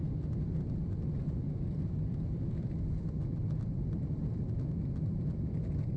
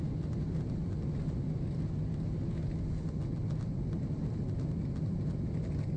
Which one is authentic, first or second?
second